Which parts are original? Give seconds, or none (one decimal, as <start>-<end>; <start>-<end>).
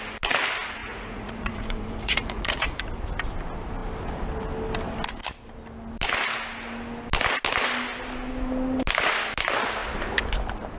0.0-0.8; 2.8-10.8